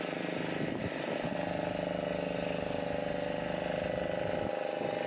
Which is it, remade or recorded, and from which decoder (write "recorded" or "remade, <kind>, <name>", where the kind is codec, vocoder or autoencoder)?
recorded